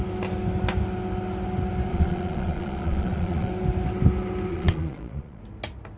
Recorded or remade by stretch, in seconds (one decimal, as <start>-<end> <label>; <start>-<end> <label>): 0.0-1.9 recorded; 1.9-3.5 remade; 3.5-4.5 recorded; 4.5-5.4 remade; 5.4-6.0 recorded